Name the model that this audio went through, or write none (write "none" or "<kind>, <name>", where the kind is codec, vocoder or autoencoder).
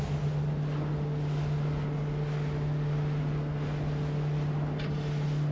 none